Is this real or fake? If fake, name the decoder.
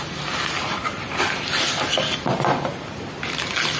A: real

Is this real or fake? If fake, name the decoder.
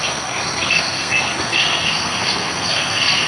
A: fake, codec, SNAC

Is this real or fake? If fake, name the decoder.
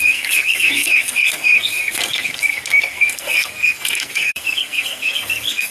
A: fake, codec, SNAC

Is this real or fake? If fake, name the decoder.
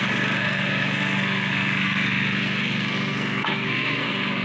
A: fake, codec, SNAC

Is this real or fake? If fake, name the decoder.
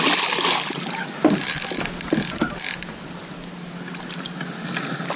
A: real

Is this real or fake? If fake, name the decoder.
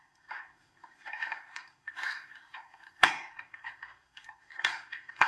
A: fake, codec, SNAC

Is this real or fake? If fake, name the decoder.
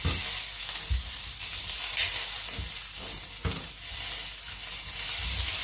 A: real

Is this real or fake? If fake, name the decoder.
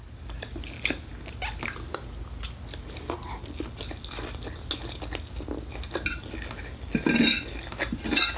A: real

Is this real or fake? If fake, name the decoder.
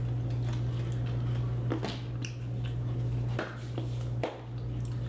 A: real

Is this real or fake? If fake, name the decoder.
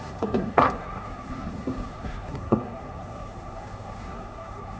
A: fake, codec, SNAC